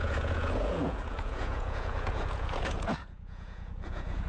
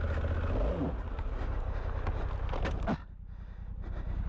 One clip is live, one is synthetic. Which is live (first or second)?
second